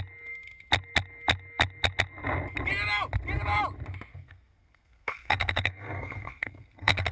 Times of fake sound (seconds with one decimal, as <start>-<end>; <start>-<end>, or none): 4.1-7.1